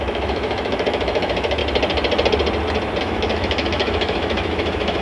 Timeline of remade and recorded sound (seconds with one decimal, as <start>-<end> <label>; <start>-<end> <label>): 0.0-1.6 remade; 1.6-3.0 recorded; 3.0-5.0 remade